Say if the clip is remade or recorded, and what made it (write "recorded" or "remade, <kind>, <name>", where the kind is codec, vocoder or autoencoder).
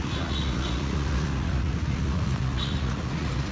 remade, vocoder, Vocos